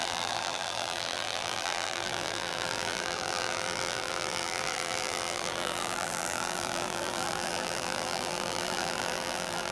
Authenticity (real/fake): fake